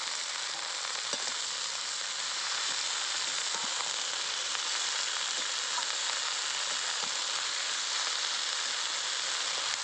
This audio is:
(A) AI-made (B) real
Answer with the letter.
B